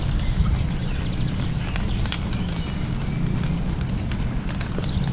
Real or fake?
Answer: real